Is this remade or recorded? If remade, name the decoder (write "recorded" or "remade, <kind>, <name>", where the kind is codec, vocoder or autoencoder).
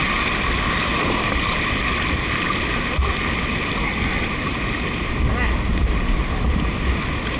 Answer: recorded